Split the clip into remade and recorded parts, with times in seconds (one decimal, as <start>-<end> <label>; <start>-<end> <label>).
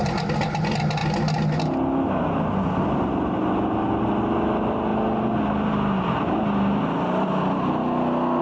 0.0-8.4 recorded